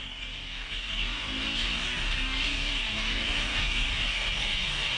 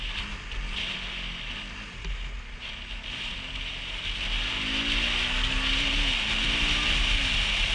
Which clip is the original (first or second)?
second